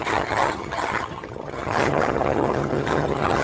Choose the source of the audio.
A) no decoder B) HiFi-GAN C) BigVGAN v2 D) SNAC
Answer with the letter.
B